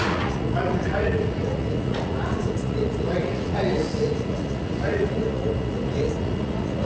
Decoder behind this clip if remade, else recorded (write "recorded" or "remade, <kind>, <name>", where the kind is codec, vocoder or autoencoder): remade, vocoder, Vocos